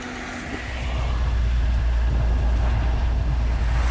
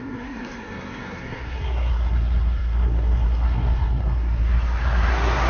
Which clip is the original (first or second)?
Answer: first